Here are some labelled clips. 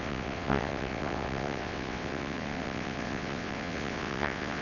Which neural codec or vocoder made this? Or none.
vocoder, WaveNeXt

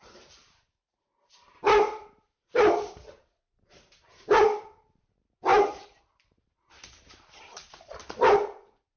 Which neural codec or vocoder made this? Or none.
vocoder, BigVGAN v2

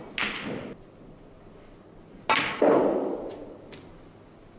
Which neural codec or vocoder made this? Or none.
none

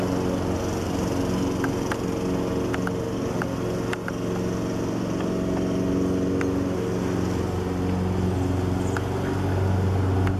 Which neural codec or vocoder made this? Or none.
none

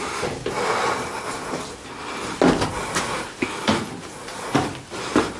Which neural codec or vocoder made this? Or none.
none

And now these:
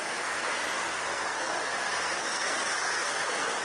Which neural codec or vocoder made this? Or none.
codec, SNAC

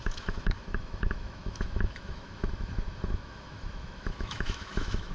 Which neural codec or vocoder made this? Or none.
autoencoder, DAC-VAE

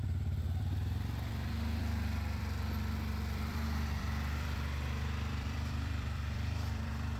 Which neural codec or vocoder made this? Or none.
vocoder, BigVGAN v2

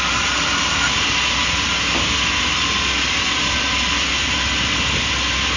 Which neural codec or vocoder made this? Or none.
none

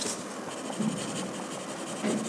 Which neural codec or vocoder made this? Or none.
none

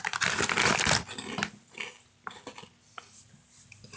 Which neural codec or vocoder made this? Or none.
none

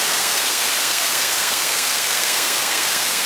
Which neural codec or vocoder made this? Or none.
codec, SNAC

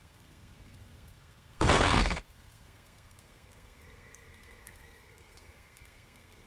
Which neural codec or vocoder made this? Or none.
codec, SNAC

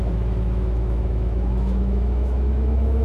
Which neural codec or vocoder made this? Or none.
autoencoder, DAC-VAE